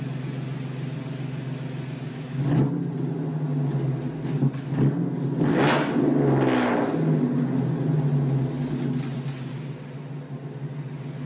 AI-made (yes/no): no